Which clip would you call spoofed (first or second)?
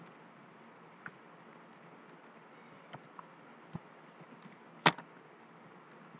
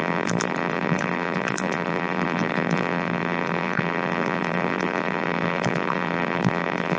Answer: second